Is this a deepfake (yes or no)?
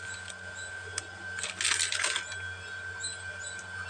no